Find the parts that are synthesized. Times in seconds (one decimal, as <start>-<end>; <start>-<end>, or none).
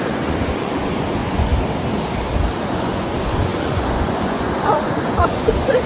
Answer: 0.0-1.5; 2.7-5.9